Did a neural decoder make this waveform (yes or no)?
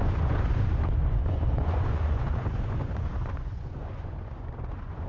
yes